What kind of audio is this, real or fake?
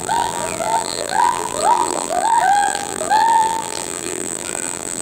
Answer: fake